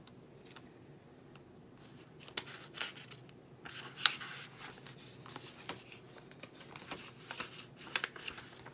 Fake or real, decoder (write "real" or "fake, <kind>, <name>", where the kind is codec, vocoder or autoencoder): real